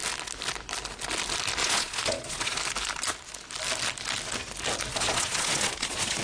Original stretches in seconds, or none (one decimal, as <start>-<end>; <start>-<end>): 0.0-1.6; 2.6-4.9